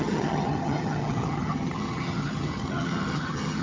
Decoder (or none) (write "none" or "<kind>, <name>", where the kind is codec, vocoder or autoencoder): vocoder, HiFi-GAN